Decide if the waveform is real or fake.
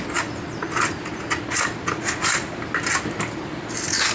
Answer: real